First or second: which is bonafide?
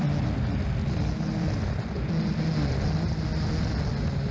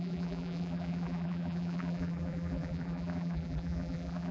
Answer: first